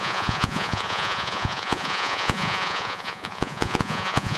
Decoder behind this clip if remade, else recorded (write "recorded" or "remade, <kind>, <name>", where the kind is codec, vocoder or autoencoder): remade, vocoder, Vocos